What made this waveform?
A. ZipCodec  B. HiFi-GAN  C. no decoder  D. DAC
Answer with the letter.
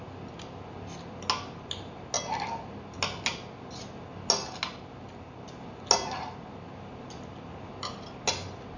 C